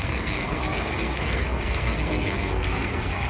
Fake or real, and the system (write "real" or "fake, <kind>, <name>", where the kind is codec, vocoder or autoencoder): fake, codec, SNAC